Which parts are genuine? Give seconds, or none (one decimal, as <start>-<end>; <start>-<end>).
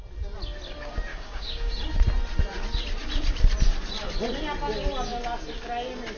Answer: 0.0-1.1; 1.7-6.2